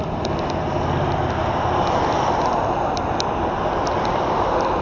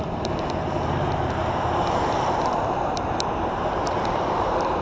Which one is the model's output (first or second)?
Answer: second